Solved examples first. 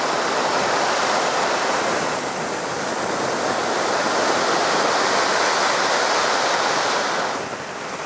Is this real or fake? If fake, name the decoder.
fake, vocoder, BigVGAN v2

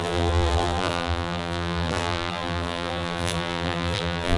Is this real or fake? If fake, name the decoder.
fake, vocoder, BigVGAN v2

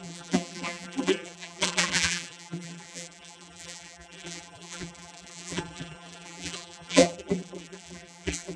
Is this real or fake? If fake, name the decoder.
fake, vocoder, BigVGAN v2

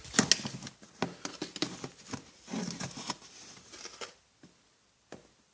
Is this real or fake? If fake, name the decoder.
real